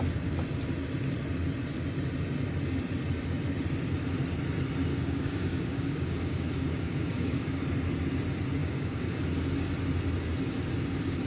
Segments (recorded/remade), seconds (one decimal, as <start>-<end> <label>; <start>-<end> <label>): 0.0-4.9 recorded; 4.9-7.6 remade; 7.6-8.6 recorded; 8.6-9.4 remade; 9.4-11.3 recorded